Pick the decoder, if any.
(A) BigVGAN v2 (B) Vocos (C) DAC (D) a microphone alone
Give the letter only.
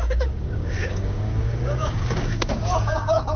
C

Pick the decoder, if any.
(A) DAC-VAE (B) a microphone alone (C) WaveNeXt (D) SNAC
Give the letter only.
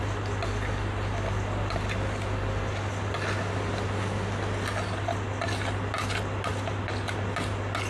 B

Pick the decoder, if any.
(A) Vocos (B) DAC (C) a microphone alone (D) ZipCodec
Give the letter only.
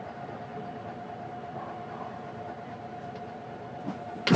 C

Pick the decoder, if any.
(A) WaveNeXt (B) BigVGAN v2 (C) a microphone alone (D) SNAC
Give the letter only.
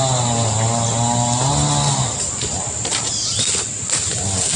C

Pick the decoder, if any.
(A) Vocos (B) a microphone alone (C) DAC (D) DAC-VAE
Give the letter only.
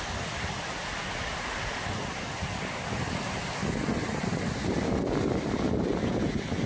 B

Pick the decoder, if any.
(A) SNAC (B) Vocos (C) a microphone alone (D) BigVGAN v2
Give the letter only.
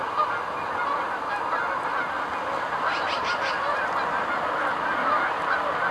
C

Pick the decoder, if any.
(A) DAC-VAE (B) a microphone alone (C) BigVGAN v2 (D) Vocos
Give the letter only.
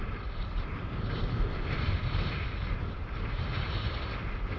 C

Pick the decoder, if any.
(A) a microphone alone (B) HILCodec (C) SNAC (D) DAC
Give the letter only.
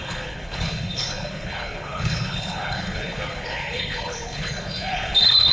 B